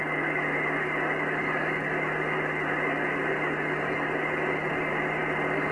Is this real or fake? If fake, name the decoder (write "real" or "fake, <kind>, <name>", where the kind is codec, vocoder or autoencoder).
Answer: real